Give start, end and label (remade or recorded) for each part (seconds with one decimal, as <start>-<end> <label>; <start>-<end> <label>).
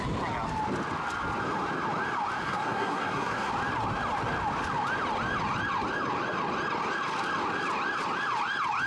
0.0-2.4 recorded; 2.4-3.5 remade; 3.5-8.9 recorded